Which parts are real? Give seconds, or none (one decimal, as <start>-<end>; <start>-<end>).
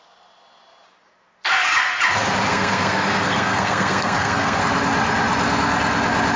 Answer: 0.0-2.5; 4.6-6.4